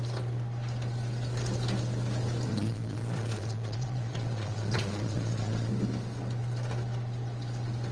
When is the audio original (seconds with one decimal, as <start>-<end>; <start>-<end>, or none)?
0.0-2.5; 5.7-7.9

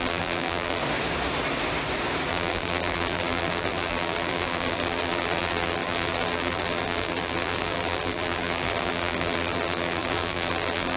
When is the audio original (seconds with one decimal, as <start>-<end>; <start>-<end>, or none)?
0.8-2.3

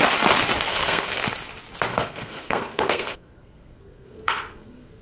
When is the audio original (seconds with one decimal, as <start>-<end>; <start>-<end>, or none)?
0.0-0.7; 1.2-1.9

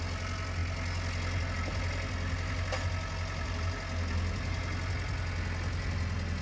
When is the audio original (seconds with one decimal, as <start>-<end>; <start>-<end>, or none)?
0.0-6.4

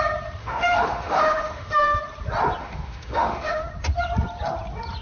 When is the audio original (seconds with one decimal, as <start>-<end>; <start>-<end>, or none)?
0.0-0.4; 2.0-2.6; 3.7-5.0

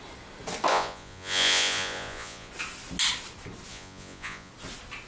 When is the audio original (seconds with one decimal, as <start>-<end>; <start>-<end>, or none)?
0.0-0.7; 2.5-3.7; 4.5-5.1

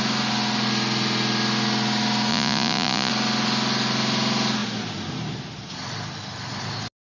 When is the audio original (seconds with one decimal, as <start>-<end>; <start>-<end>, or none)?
0.0-2.3; 3.1-7.1

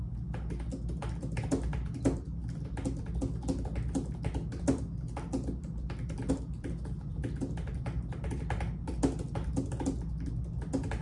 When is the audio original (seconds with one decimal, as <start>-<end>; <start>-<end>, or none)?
0.0-11.0